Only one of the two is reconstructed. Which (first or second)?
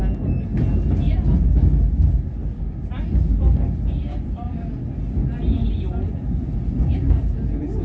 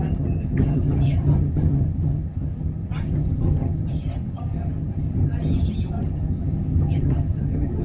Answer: second